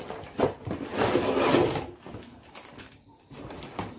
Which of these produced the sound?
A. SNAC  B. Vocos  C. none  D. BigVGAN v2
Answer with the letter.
C